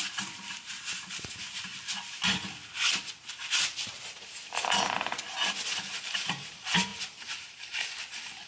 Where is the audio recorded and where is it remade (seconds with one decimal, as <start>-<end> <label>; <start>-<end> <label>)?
0.0-1.7 remade; 1.7-6.0 recorded; 6.0-8.5 remade